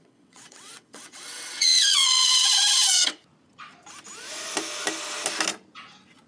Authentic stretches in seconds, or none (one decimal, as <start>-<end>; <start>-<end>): 3.2-6.3